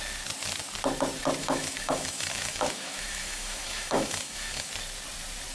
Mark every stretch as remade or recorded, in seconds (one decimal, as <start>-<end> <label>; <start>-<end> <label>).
0.0-1.4 recorded; 1.4-4.7 remade; 4.7-5.5 recorded